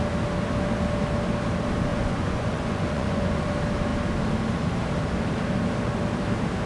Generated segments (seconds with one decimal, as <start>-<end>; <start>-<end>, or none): 1.9-3.5